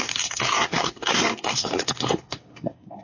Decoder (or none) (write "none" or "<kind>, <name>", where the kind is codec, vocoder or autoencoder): codec, SNAC